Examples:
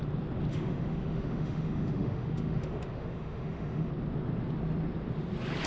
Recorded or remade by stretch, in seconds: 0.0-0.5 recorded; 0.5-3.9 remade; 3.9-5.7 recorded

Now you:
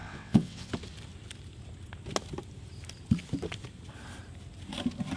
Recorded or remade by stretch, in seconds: 0.0-0.7 remade; 0.7-5.2 recorded

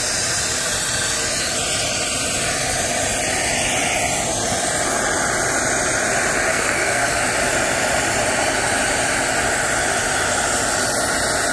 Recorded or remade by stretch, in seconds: 0.0-6.5 recorded; 6.5-7.2 remade; 7.2-11.5 recorded

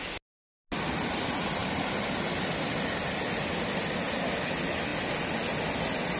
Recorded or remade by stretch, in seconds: 0.0-1.6 recorded; 1.6-3.4 remade; 3.4-6.2 recorded

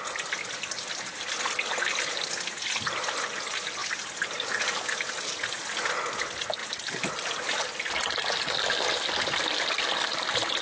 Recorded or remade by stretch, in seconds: 0.0-10.6 recorded